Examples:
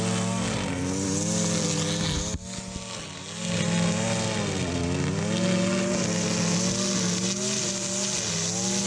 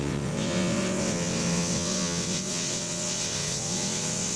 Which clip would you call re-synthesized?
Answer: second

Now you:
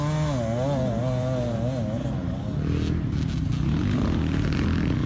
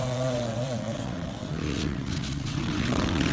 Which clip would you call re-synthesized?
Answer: second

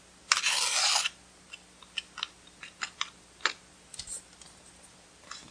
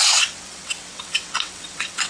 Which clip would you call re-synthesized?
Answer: second